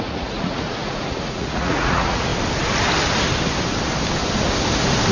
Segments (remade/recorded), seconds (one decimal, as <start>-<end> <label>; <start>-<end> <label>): 0.0-2.3 remade; 2.3-5.1 recorded